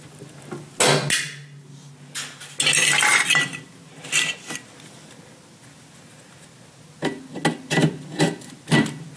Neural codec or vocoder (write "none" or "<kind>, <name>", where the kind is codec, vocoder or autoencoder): none